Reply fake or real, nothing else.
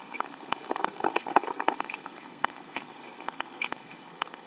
fake